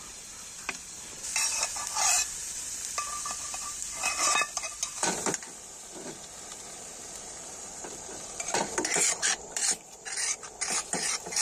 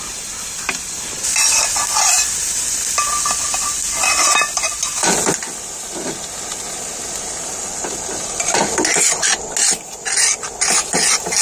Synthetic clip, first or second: first